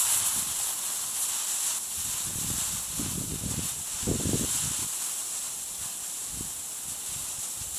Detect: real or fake fake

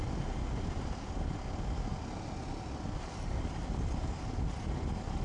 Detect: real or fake real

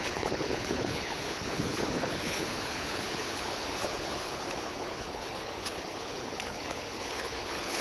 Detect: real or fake fake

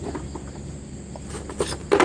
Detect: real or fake real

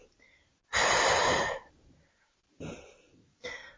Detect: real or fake real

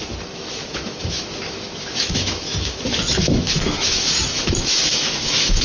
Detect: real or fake fake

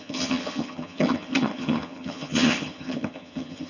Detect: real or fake fake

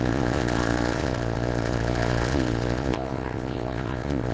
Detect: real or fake fake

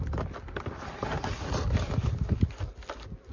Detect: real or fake real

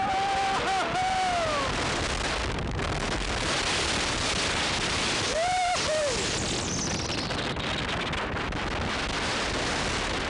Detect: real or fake real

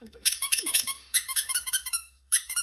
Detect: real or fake fake